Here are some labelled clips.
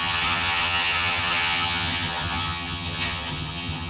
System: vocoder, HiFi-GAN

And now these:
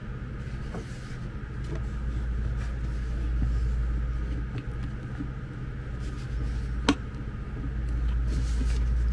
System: none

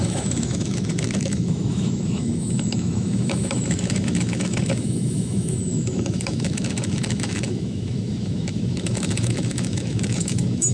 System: autoencoder, DAC-VAE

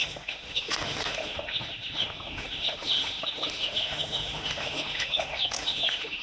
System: autoencoder, DAC-VAE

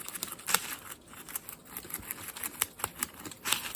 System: none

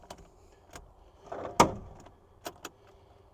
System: none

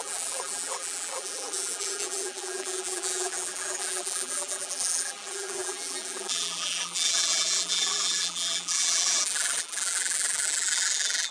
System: vocoder, BigVGAN v2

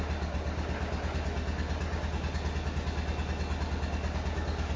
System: none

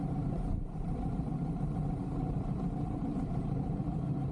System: vocoder, BigVGAN v2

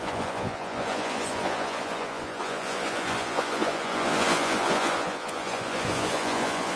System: vocoder, Vocos